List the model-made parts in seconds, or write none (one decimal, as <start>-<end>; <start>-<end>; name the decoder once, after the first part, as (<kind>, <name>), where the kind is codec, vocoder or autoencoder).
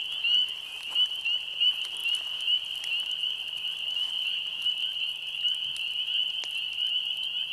2.0-4.5 (vocoder, BigVGAN v2)